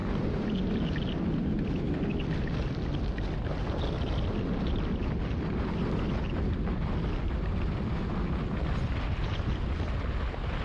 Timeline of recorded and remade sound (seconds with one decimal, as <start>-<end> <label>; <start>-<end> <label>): 0.0-10.6 recorded